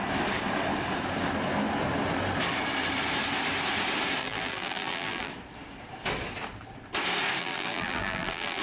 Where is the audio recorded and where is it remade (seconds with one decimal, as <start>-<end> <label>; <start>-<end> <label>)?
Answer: 0.0-4.2 recorded; 4.2-5.3 remade; 5.3-7.4 recorded; 7.4-8.6 remade